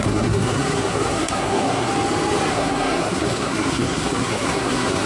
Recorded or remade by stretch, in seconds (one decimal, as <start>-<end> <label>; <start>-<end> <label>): 0.0-1.9 remade; 1.9-2.5 recorded; 2.5-5.1 remade